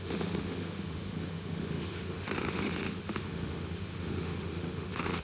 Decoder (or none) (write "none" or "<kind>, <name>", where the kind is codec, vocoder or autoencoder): autoencoder, DAC-VAE